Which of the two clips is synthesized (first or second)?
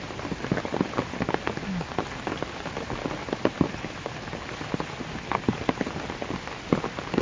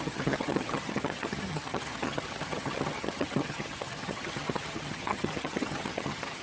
second